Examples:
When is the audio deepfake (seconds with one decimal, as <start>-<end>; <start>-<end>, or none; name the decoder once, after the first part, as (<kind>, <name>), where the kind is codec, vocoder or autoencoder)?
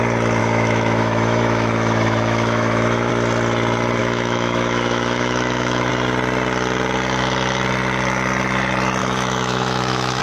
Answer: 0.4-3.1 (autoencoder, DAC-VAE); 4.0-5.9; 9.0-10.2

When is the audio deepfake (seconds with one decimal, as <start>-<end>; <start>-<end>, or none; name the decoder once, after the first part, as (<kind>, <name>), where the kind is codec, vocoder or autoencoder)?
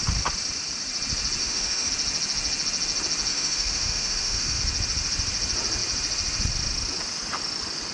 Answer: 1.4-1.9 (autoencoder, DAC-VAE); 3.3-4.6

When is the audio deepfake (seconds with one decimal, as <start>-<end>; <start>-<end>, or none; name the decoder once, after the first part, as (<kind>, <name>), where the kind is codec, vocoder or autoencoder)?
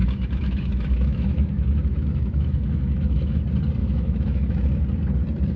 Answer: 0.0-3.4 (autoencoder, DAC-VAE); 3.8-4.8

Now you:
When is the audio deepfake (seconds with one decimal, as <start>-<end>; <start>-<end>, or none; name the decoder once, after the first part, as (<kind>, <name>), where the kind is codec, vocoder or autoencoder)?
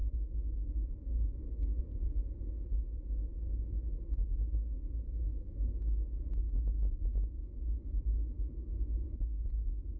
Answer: 0.0-1.8 (autoencoder, DAC-VAE); 5.3-7.4; 8.2-8.7